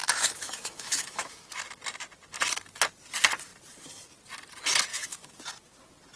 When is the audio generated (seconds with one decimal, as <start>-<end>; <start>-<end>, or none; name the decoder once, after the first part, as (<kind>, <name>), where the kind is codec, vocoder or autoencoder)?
0.0-1.4 (autoencoder, DAC-VAE); 4.9-5.4